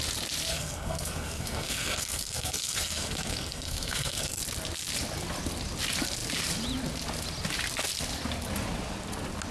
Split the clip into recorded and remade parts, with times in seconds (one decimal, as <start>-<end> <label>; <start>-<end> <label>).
0.0-0.5 recorded; 0.5-4.4 remade; 4.4-9.5 recorded